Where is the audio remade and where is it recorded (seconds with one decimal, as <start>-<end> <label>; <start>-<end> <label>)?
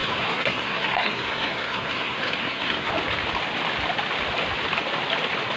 0.0-2.9 remade; 2.9-5.6 recorded